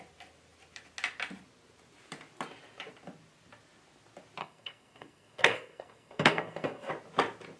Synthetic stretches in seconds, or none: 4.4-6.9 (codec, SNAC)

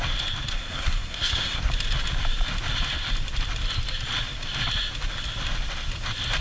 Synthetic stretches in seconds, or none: 0.5-1.6 (codec, SNAC)

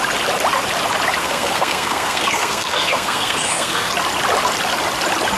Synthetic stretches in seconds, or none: 1.2-3.9 (codec, SNAC)

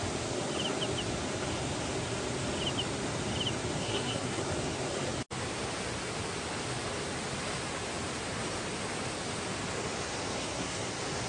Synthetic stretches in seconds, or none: 3.8-4.4 (codec, SNAC); 10.4-10.9

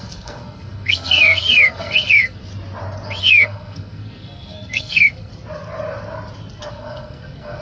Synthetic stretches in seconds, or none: 0.0-2.5 (codec, SNAC); 3.2-5.3; 6.7-7.6

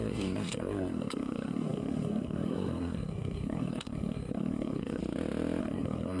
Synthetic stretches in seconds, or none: 0.0-5.0 (codec, SNAC); 5.6-6.2

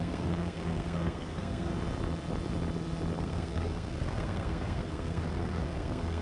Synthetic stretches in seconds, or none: 0.0-1.7 (codec, SNAC); 3.2-6.2

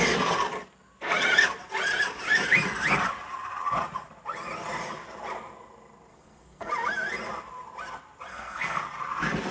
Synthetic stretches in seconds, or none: 6.1-6.7 (codec, SNAC); 8.3-8.8